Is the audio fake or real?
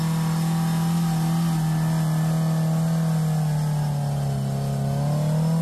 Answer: real